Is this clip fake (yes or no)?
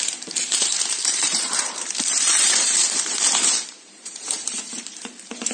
yes